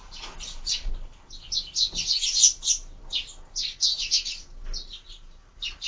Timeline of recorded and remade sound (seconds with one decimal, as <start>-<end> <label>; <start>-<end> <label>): 0.0-0.9 remade; 0.9-5.9 recorded